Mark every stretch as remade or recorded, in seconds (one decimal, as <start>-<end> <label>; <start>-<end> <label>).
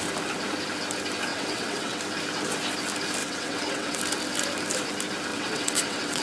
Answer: 0.0-1.3 recorded; 1.3-2.0 remade; 2.0-3.2 recorded; 3.2-4.0 remade; 4.0-5.3 recorded; 5.3-6.2 remade